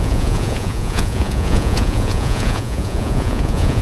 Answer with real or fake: fake